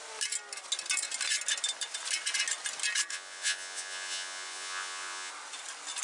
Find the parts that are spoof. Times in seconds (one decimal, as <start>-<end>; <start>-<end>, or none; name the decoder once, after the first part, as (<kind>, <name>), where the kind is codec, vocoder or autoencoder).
3.1-5.3 (vocoder, Vocos)